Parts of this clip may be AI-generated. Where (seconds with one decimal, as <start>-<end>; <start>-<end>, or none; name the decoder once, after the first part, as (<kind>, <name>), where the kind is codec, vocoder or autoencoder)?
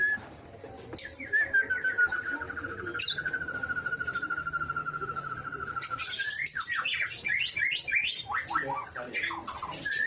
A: 4.8-5.3 (autoencoder, DAC-VAE)